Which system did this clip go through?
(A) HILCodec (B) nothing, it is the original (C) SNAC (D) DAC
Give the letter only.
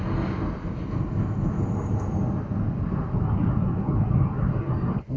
B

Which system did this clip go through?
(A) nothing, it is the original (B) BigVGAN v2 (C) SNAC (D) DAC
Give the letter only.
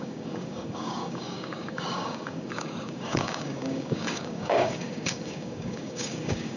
D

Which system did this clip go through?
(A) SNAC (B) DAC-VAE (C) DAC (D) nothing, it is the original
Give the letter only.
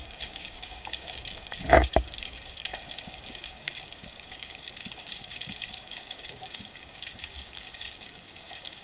C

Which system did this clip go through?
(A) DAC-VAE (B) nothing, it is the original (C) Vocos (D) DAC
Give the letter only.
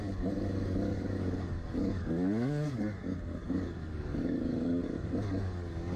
D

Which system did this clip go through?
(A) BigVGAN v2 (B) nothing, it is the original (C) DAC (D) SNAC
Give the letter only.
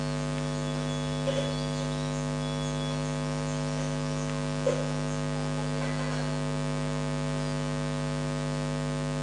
B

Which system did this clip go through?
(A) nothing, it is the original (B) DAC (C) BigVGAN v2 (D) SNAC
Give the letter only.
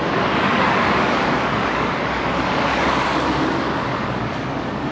B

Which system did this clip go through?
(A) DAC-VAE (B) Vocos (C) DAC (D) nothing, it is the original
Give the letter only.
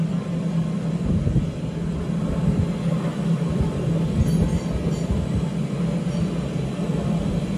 D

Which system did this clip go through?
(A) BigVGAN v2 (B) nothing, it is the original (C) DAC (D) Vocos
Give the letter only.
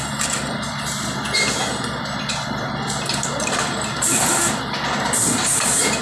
B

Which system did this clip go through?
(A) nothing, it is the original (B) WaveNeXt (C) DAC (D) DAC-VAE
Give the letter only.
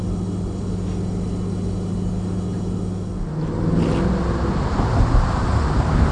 A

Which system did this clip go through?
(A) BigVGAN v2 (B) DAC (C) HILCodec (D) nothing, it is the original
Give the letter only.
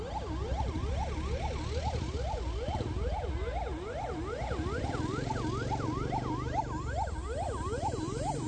D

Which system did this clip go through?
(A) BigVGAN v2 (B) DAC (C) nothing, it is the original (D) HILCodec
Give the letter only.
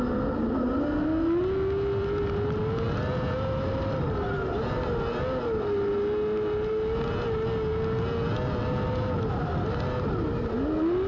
C